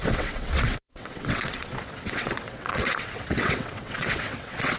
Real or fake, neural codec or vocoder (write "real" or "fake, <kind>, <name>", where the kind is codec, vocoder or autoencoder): fake, vocoder, WaveNeXt